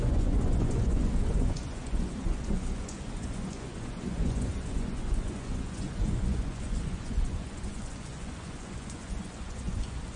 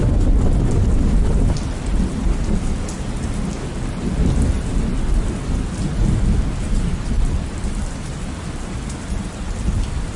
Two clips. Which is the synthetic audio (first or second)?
first